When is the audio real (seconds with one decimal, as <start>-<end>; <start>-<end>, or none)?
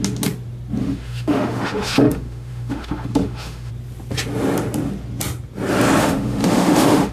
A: 0.0-0.8; 3.7-6.0